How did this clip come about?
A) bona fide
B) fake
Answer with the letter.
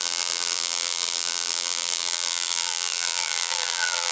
B